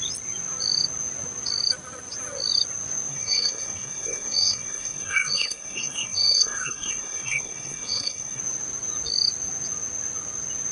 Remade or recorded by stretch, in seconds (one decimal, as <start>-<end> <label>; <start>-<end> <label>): 0.0-3.1 recorded; 3.1-8.4 remade; 8.4-10.7 recorded